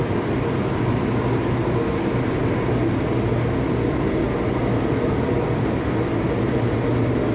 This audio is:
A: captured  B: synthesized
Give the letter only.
A